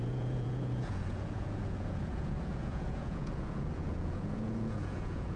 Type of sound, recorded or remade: remade